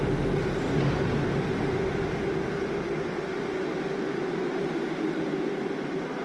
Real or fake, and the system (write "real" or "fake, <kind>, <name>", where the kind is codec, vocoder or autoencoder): real